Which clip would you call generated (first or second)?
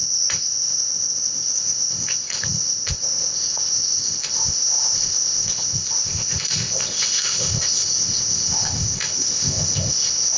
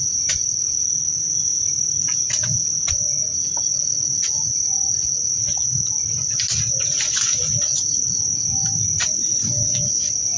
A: first